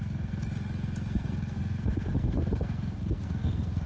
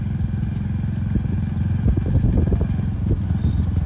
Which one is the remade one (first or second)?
first